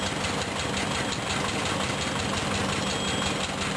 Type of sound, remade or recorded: recorded